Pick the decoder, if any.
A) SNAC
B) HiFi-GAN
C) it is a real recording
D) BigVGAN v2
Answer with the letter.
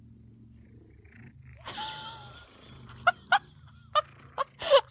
C